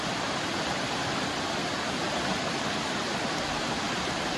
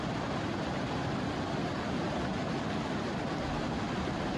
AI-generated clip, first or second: first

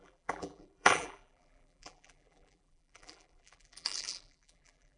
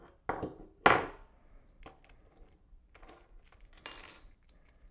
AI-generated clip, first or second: first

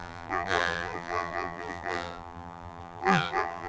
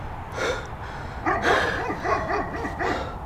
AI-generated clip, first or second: first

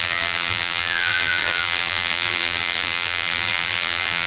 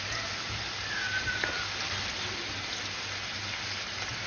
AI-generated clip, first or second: first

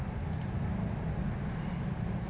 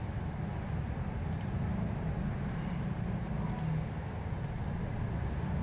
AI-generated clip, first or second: second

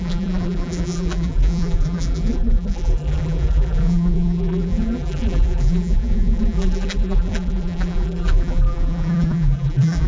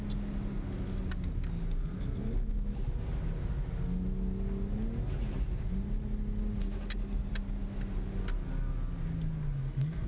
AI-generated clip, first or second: first